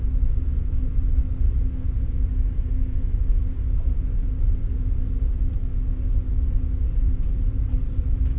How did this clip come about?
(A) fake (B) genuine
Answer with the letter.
B